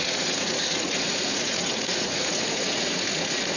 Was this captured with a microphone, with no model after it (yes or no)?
no